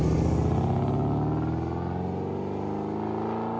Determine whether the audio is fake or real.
real